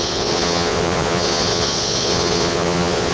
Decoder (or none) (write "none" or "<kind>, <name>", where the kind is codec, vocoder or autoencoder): vocoder, Vocos